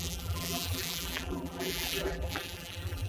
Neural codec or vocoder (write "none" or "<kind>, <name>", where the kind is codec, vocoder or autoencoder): vocoder, BigVGAN v2